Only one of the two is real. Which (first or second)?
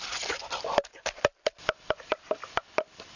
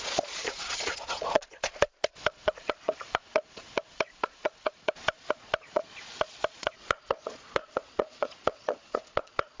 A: first